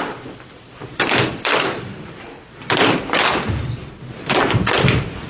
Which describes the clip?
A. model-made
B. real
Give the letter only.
A